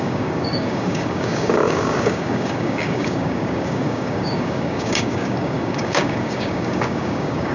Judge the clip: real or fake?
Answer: fake